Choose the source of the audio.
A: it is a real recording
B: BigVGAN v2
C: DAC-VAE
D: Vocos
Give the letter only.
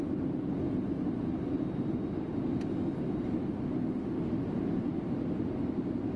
A